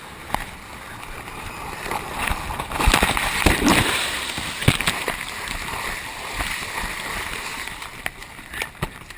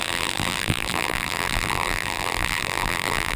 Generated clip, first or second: second